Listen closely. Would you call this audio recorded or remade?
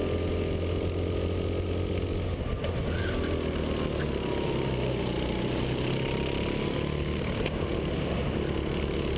recorded